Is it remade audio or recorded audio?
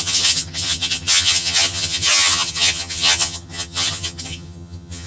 remade